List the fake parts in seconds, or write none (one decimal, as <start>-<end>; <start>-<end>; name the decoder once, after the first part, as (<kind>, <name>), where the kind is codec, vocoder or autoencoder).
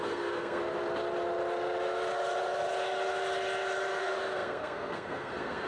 0.0-0.6 (codec, SNAC); 4.0-5.7